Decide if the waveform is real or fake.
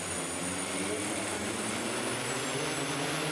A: real